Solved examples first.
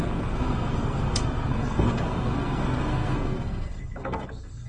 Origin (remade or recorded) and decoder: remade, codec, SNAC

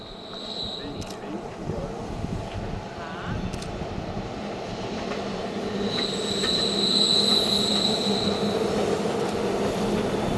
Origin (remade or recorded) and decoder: recorded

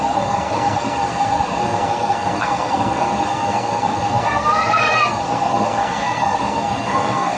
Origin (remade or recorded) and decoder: remade, codec, SNAC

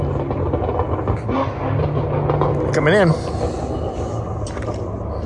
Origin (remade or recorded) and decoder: recorded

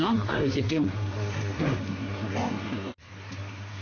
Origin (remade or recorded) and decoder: remade, codec, SNAC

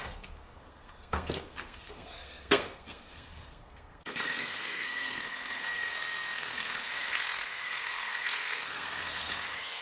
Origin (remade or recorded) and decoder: remade, codec, SNAC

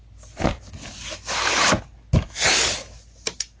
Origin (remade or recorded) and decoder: recorded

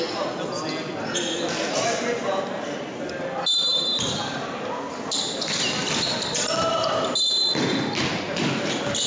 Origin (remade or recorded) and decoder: recorded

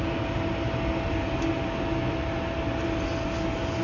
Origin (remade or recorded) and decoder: recorded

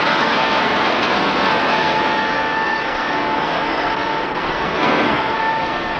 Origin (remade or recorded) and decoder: remade, codec, SNAC